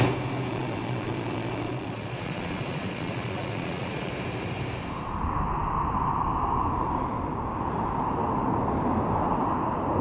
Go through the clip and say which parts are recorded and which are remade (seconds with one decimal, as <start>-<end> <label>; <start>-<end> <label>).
0.0-0.5 recorded; 0.5-4.1 remade; 4.1-10.0 recorded